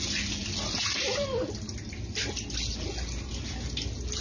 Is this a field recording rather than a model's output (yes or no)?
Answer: yes